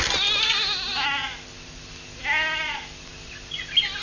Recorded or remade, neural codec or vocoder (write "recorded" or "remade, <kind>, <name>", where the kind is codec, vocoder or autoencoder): recorded